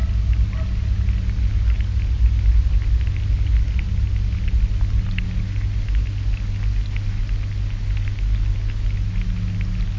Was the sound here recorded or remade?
recorded